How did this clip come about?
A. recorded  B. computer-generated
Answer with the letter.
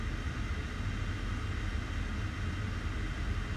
A